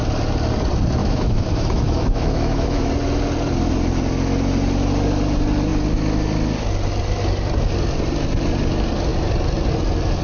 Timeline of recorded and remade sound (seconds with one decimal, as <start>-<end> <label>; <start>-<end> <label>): 0.0-1.0 recorded; 1.0-2.9 remade; 2.9-10.2 recorded